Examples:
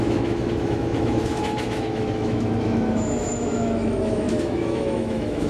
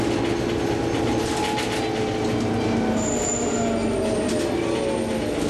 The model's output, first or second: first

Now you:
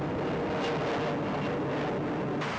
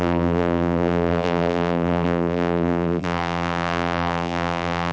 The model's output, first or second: second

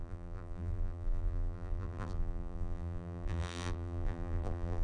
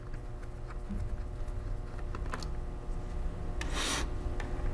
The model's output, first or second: first